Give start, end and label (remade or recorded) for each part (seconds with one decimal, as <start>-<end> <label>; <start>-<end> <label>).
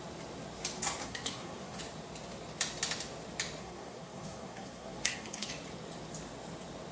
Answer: 0.0-1.0 recorded; 1.0-1.8 remade; 1.8-3.6 recorded; 3.6-5.5 remade; 5.5-6.9 recorded